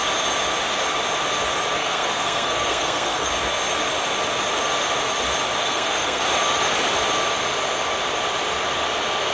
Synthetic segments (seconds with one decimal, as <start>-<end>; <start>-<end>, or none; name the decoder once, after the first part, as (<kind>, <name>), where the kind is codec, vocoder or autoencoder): 1.8-3.3 (codec, SNAC); 5.6-6.2